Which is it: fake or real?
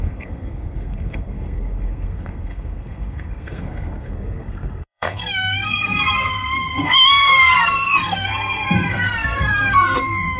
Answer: fake